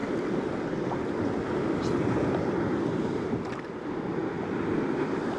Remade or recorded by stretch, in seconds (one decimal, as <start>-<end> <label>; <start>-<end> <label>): 0.0-5.4 recorded

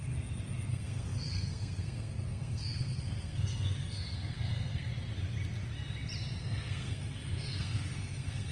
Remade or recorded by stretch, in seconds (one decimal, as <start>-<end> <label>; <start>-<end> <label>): 0.0-0.7 recorded; 0.7-4.9 remade; 4.9-6.4 recorded; 6.4-8.5 remade